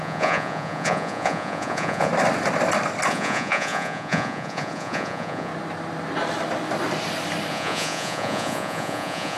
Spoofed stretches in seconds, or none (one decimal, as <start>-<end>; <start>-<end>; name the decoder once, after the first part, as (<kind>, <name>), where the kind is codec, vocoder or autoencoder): 0.0-2.1 (vocoder, Vocos); 3.1-5.5; 7.5-9.4